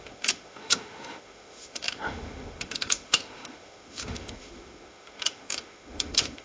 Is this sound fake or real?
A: fake